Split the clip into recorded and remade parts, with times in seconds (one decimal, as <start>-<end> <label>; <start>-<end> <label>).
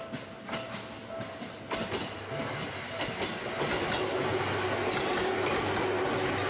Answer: 0.0-6.5 recorded